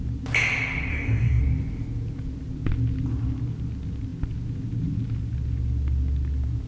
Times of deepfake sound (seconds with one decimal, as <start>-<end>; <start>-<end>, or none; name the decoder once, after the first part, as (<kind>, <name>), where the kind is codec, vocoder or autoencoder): 0.9-1.4 (codec, DAC)